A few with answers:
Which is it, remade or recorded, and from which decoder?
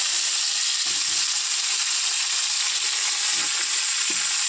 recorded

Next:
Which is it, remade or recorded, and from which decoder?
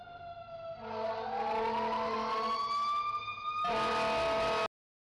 recorded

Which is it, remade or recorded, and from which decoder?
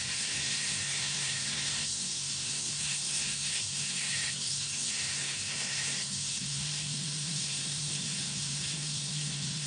remade, codec, SNAC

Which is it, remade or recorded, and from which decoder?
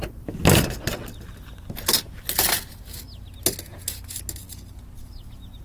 recorded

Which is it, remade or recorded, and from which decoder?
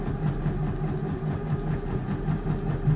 recorded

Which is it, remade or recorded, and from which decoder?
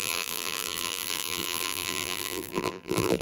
remade, vocoder, BigVGAN v2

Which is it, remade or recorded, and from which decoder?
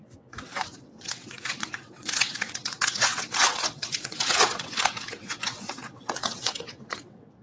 remade, vocoder, WaveNeXt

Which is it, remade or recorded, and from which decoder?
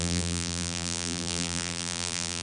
remade, vocoder, BigVGAN v2